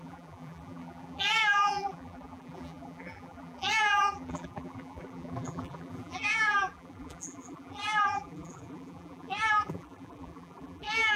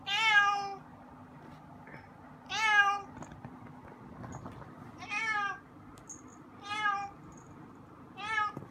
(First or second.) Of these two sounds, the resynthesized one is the first